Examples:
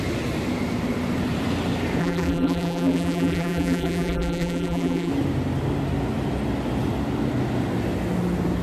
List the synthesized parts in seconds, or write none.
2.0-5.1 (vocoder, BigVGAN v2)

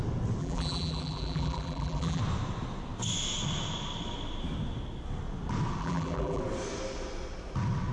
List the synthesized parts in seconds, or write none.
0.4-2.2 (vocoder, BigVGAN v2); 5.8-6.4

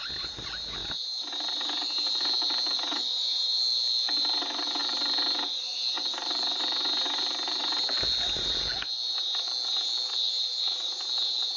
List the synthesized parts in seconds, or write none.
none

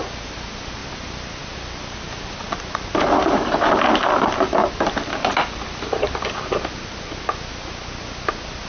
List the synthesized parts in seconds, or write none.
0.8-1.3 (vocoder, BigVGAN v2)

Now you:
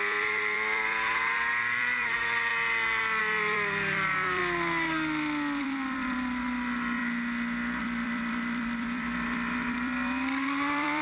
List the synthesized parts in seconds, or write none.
0.0-2.5 (vocoder, BigVGAN v2); 3.2-4.4; 5.6-7.0; 7.8-11.0

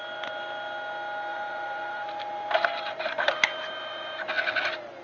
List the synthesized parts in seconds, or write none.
1.3-4.3 (vocoder, BigVGAN v2)

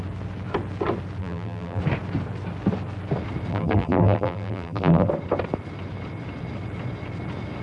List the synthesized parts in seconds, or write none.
1.2-1.8 (vocoder, BigVGAN v2); 3.5-5.1

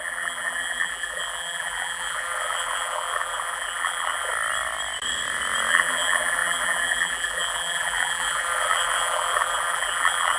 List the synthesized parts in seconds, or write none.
0.0-4.3 (vocoder, BigVGAN v2); 5.7-10.4